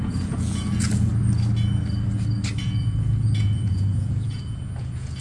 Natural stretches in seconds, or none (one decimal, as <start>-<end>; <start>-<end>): 1.1-2.6